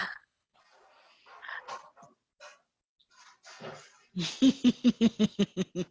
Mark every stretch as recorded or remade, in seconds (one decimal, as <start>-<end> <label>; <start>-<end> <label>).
0.0-0.6 remade; 0.6-4.8 recorded; 4.8-5.4 remade; 5.4-5.9 recorded